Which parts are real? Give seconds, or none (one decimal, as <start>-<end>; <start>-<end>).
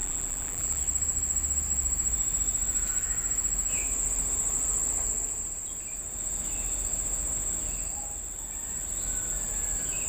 0.8-10.1